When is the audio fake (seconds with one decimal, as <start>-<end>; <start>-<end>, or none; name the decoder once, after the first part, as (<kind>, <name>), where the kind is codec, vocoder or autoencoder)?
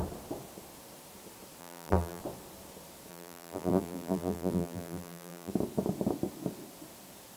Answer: 1.6-2.2 (vocoder, BigVGAN v2); 3.1-5.5